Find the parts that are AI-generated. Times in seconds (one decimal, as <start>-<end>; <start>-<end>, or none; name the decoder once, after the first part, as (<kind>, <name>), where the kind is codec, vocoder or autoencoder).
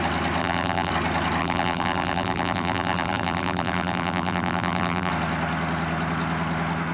0.4-0.9 (vocoder, BigVGAN v2); 1.4-5.1